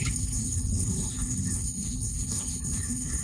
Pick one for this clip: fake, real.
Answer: fake